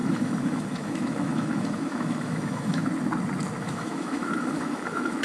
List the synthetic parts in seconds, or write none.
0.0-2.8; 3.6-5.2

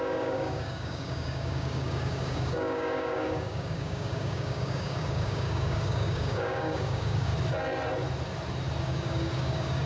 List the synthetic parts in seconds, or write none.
0.0-7.3; 8.8-9.9